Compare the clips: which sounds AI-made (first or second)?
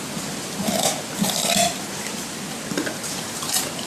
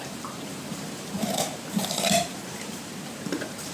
second